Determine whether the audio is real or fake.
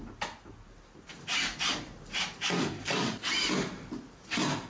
real